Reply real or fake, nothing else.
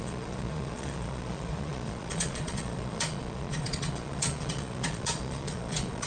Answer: fake